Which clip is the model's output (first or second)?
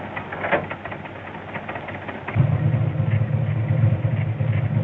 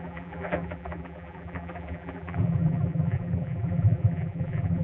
second